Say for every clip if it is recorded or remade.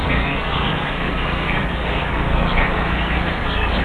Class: remade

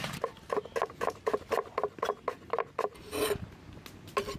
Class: recorded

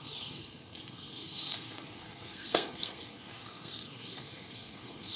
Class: remade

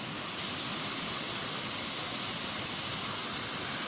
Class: recorded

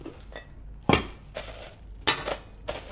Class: recorded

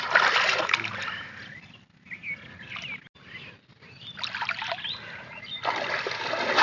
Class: recorded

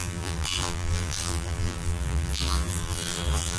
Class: remade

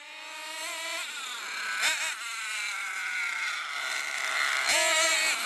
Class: recorded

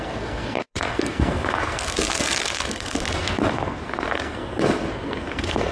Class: remade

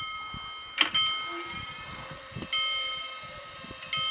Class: recorded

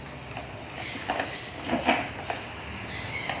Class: recorded